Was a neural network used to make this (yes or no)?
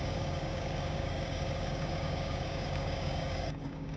yes